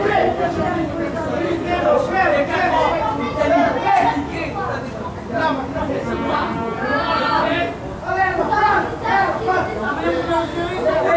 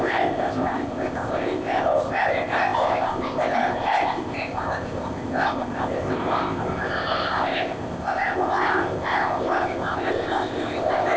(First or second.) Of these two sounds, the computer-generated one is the second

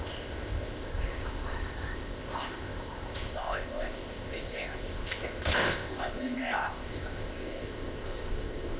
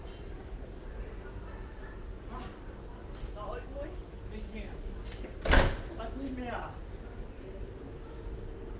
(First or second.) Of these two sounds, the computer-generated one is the first